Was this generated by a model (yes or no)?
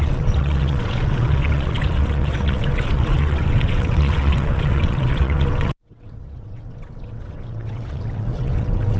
yes